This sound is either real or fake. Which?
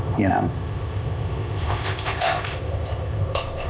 fake